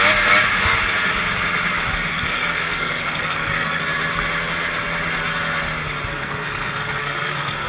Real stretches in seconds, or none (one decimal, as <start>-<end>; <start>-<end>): 0.0-2.1; 3.8-6.1